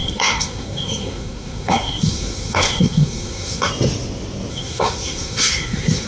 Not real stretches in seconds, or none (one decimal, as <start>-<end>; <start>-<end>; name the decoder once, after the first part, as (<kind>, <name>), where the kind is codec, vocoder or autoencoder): 0.0-3.7 (codec, SNAC); 4.5-6.1

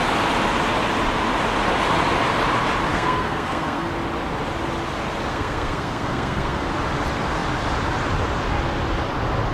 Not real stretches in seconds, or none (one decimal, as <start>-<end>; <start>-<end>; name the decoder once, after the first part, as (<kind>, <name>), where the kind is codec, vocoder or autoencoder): 2.9-3.9 (codec, SNAC); 5.3-6.7

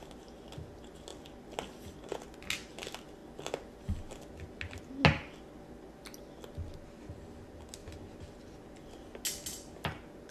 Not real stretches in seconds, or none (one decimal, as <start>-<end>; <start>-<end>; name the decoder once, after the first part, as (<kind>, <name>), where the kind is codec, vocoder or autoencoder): none

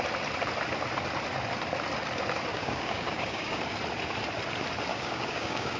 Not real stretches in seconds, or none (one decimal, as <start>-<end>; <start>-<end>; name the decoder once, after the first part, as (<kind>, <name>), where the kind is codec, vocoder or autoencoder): 2.5-3.6 (codec, DAC); 4.9-5.8

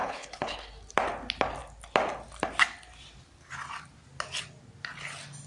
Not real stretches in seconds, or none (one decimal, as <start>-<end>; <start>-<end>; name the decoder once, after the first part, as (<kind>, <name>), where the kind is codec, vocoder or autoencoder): 0.0-0.7 (codec, HILCodec)

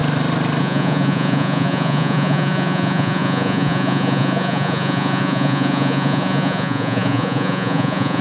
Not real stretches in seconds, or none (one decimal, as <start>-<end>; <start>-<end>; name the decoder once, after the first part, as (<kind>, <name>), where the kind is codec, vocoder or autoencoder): 0.6-8.2 (vocoder, Vocos)

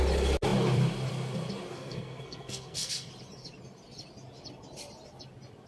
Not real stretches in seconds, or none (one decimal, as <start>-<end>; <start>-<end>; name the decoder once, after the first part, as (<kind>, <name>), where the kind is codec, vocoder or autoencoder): 1.7-3.1 (codec, SNAC)